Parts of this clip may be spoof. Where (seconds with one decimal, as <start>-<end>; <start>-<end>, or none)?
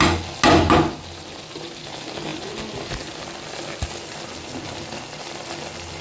none